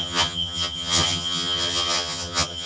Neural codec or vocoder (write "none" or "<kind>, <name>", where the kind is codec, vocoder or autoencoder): vocoder, HiFi-GAN